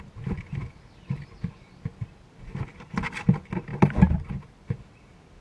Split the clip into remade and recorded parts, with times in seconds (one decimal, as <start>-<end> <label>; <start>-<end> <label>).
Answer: 0.0-5.4 recorded